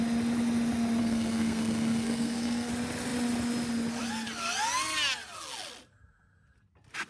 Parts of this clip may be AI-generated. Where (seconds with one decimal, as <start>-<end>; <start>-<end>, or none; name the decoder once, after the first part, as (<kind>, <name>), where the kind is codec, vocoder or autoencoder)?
1.0-2.7 (codec, SNAC)